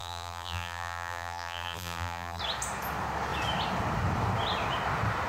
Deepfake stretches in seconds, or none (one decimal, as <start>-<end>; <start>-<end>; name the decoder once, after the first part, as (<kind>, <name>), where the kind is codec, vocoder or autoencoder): 0.0-2.4 (vocoder, BigVGAN v2)